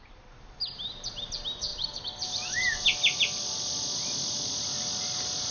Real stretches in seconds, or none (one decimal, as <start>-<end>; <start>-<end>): 0.0-1.7; 2.8-5.5